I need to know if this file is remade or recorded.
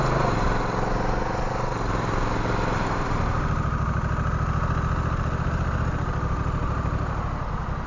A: recorded